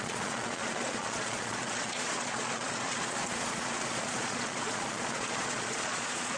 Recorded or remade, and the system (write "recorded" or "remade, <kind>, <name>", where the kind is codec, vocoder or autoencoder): remade, vocoder, Vocos